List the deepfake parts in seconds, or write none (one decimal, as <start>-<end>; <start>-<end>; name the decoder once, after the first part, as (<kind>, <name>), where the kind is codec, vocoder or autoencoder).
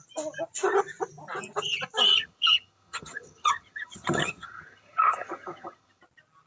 2.1-6.0 (vocoder, HiFi-GAN)